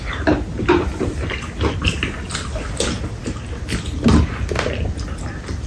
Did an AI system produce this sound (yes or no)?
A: no